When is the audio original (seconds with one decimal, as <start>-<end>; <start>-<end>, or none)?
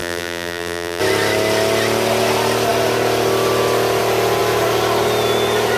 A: 1.0-5.8